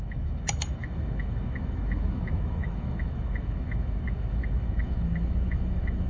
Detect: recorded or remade remade